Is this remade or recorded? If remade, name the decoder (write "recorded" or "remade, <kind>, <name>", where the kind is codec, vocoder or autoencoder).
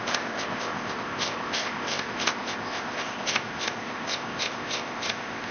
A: remade, codec, ZipCodec